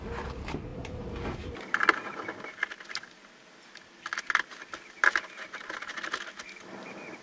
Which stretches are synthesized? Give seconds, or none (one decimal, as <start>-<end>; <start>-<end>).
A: none